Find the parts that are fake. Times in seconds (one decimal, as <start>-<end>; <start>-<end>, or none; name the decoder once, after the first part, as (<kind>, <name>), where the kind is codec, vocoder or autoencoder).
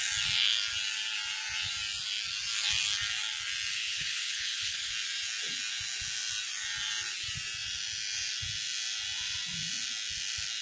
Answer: 3.7-4.9 (codec, HILCodec)